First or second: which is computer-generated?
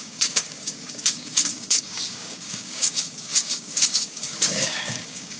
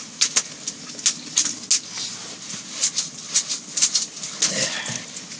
first